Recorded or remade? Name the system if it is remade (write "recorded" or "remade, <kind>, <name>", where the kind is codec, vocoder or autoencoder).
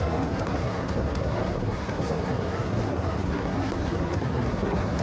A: remade, codec, SNAC